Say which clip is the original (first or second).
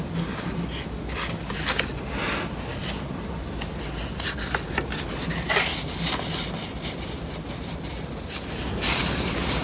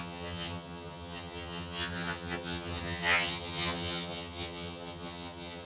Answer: first